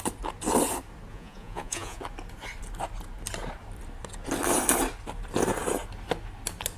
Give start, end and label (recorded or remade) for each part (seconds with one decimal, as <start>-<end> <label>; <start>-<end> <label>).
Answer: 0.0-1.1 recorded; 1.1-2.0 remade; 2.0-6.8 recorded